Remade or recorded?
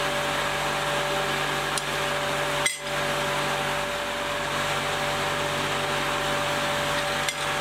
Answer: recorded